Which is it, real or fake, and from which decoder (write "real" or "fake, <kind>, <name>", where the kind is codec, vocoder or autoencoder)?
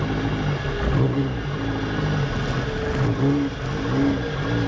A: real